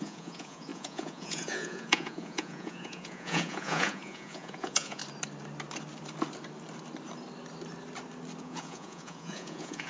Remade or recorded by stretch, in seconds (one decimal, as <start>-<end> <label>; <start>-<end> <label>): 0.0-5.0 remade; 5.0-8.4 recorded; 8.4-9.9 remade